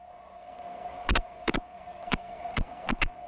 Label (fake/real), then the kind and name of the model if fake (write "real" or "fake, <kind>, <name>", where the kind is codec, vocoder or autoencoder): fake, codec, SNAC